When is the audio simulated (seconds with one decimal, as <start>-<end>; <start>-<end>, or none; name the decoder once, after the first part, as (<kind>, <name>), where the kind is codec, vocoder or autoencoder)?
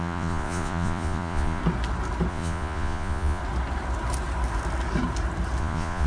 0.0-1.6 (vocoder, Vocos); 2.3-3.4; 5.6-6.1